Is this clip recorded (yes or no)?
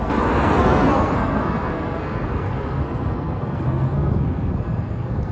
no